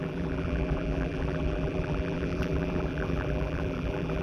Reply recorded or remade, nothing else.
remade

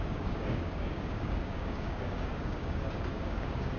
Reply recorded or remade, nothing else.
remade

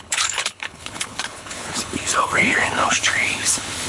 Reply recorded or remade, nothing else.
remade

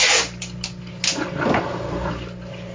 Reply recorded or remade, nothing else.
recorded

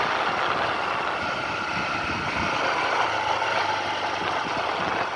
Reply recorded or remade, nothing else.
recorded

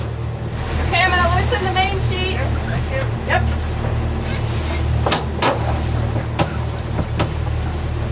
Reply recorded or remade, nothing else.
recorded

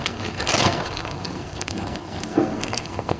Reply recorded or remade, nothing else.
remade